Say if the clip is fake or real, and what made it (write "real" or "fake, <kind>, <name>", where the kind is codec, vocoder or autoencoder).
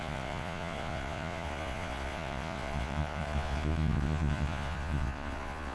fake, vocoder, Vocos